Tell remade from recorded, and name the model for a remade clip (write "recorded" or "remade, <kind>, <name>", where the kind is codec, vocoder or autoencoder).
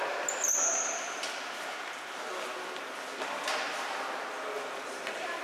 recorded